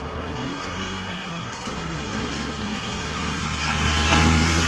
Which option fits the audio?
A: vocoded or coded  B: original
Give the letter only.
A